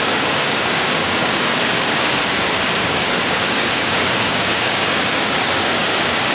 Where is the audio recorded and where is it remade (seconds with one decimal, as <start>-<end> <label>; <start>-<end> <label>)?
0.0-2.2 remade; 2.2-2.9 recorded; 2.9-6.3 remade